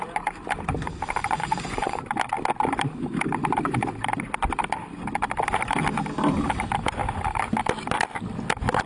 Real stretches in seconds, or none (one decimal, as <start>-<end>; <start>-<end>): 0.0-1.2; 2.0-8.9